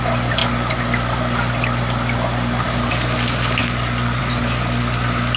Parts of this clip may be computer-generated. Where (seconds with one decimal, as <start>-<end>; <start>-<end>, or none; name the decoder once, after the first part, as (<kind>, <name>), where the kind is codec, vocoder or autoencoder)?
none